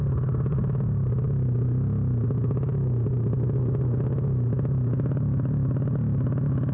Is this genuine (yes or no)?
yes